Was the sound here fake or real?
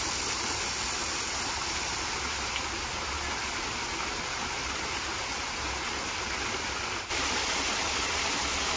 real